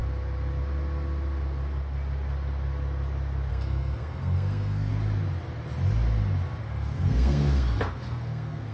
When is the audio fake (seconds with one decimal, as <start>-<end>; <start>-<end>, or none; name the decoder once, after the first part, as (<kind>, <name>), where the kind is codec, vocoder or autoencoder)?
3.5-4.9 (codec, SNAC); 6.6-8.7